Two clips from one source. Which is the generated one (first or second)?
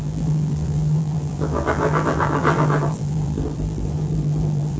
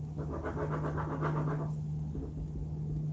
first